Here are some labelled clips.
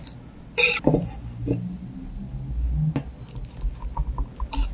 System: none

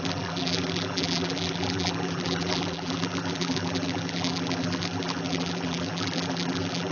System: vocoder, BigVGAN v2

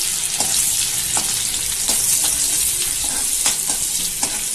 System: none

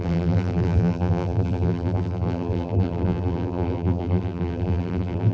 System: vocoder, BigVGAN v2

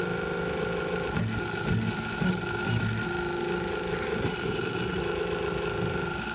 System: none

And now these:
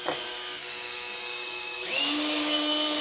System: codec, DAC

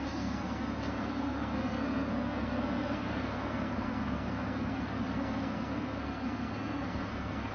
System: codec, SNAC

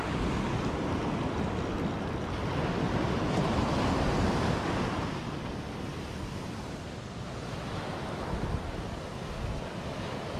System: none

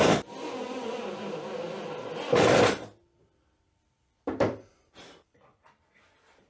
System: vocoder, BigVGAN v2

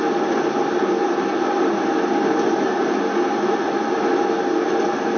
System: none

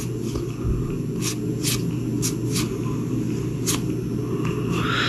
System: none